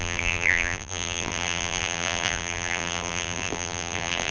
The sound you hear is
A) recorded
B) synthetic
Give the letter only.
B